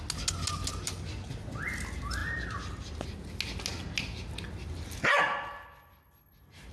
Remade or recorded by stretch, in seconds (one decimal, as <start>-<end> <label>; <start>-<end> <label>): 0.0-6.7 recorded